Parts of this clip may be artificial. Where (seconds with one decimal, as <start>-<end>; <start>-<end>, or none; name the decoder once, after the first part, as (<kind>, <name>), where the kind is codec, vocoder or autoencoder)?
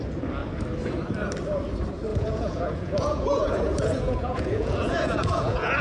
2.1-5.8 (vocoder, Vocos)